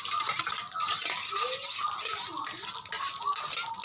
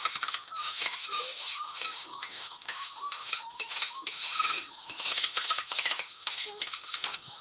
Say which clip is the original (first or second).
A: first